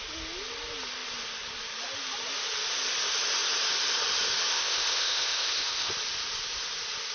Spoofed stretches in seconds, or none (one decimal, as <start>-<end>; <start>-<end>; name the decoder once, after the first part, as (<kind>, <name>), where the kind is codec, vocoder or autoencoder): 4.5-5.9 (codec, ZipCodec)